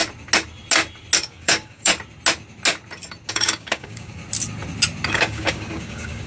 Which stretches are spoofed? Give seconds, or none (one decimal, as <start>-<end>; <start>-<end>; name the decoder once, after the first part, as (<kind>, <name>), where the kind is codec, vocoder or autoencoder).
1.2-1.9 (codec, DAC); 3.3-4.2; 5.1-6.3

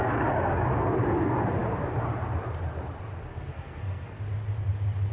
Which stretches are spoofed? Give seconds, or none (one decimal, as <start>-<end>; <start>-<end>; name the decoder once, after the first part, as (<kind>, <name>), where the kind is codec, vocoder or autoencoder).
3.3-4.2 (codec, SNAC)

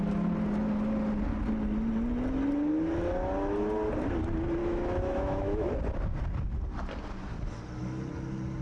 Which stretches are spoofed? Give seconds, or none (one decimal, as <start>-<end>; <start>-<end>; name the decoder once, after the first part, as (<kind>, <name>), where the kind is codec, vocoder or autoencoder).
4.6-5.7 (autoencoder, DAC-VAE)

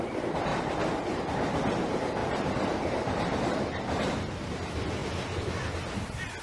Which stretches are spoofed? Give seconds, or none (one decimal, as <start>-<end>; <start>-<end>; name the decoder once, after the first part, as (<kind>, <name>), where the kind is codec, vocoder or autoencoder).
2.2-3.7 (vocoder, BigVGAN v2)

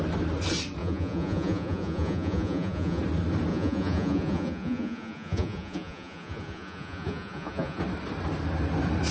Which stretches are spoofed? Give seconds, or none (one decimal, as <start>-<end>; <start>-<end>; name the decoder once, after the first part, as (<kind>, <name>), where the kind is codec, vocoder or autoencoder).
0.8-3.0 (vocoder, Vocos); 3.5-7.8